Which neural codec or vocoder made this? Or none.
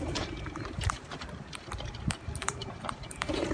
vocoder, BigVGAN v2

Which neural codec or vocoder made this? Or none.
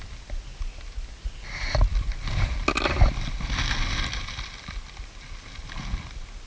none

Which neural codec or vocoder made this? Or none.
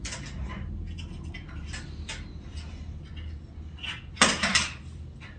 none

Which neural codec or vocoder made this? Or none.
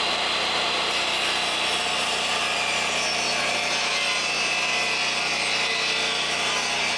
none